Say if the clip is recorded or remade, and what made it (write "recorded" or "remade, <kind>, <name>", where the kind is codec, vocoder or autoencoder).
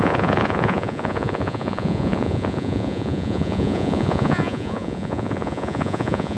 remade, vocoder, Vocos